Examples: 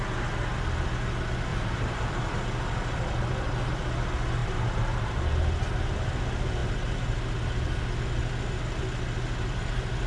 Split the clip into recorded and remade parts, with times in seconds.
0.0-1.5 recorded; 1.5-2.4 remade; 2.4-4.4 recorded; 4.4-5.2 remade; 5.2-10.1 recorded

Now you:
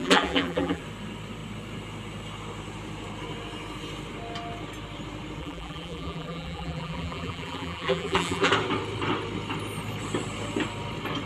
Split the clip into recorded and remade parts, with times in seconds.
0.0-0.8 remade; 0.8-5.4 recorded; 5.4-8.5 remade; 8.5-11.3 recorded

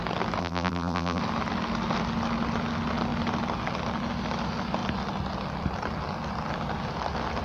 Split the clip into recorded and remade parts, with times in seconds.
0.0-0.4 recorded; 0.4-1.2 remade; 1.2-7.4 recorded